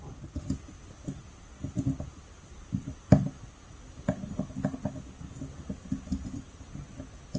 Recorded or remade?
recorded